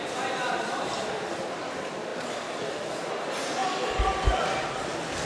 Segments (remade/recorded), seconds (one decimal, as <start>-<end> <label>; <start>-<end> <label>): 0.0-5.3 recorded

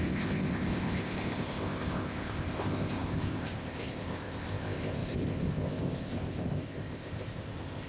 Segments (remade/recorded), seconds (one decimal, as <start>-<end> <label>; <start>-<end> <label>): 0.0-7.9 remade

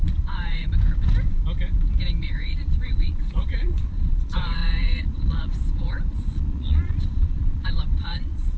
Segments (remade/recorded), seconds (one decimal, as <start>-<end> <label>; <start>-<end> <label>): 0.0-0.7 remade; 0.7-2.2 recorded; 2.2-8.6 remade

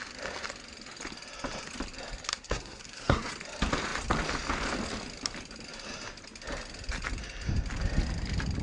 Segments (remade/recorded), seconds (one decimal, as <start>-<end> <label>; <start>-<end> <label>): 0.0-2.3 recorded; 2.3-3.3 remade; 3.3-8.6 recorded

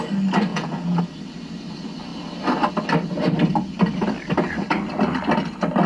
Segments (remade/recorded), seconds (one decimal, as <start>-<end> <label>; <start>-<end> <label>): 0.0-0.5 recorded; 0.5-1.0 remade; 1.0-5.9 recorded

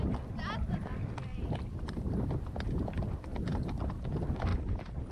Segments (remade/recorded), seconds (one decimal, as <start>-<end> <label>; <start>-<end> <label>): 0.0-1.3 recorded; 1.3-2.6 remade; 2.6-4.5 recorded; 4.5-5.1 remade

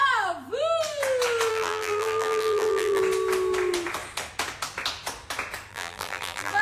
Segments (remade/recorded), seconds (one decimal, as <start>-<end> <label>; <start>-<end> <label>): 0.0-1.5 recorded; 1.5-3.0 remade; 3.0-5.7 recorded; 5.7-6.6 remade